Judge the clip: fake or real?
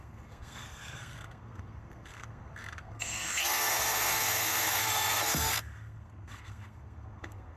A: fake